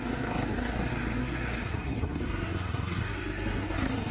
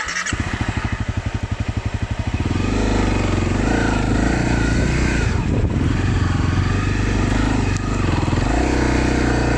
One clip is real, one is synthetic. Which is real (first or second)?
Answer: second